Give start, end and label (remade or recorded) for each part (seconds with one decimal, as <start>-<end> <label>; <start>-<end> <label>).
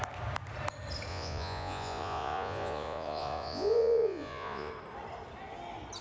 0.0-1.1 recorded; 1.1-4.7 remade; 4.7-6.0 recorded